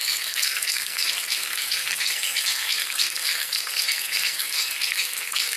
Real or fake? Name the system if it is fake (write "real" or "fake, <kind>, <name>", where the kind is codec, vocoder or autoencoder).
fake, codec, SNAC